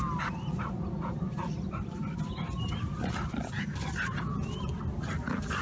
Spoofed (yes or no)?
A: no